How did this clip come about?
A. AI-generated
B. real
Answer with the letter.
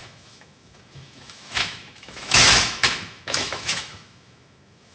A